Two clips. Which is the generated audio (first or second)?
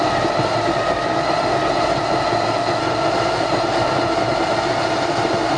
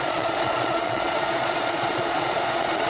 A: second